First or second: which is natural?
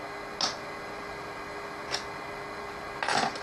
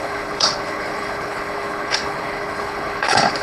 first